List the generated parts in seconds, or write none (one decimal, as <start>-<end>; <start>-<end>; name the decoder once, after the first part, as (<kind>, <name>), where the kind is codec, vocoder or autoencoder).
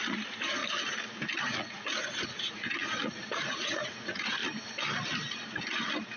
0.0-0.6 (vocoder, Vocos); 1.4-4.4